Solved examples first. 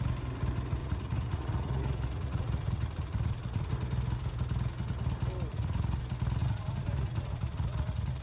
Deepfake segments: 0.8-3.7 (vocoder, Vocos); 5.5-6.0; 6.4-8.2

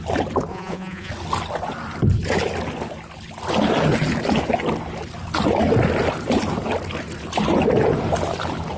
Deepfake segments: 0.5-1.1 (vocoder, Vocos)

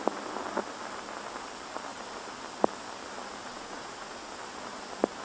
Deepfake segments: 3.5-4.3 (vocoder, Vocos)

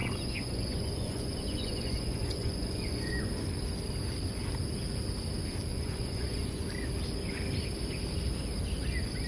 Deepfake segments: 0.0-3.2 (vocoder, Vocos); 5.7-6.6